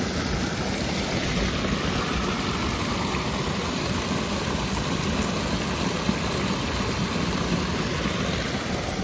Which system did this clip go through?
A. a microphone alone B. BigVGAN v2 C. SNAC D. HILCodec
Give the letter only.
A